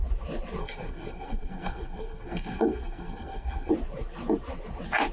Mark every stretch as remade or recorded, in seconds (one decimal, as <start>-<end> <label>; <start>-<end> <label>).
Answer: 0.0-0.6 recorded; 0.6-3.7 remade; 3.7-5.1 recorded